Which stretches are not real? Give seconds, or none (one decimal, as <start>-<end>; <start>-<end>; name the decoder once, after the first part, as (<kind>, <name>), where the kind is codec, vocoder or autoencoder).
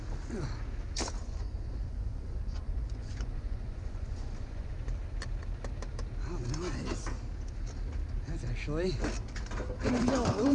1.2-4.7 (vocoder, Vocos)